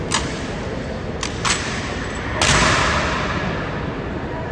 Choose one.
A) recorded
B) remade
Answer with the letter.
A